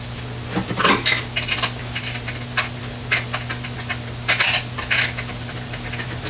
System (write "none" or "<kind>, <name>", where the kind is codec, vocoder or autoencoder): none